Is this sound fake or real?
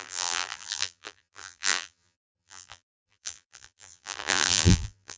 fake